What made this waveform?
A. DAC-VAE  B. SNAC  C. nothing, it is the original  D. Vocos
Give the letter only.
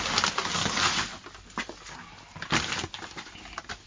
C